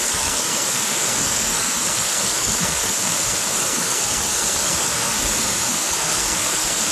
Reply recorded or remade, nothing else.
remade